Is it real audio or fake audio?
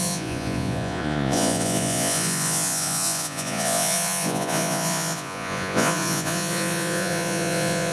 fake